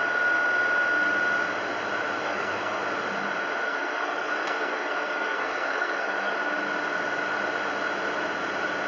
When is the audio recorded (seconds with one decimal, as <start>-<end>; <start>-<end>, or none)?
0.0-2.2; 2.8-3.6; 6.3-8.9